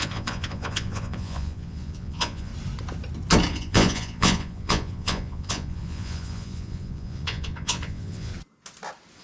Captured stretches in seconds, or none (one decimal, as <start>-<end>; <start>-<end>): 2.5-3.5; 8.3-9.2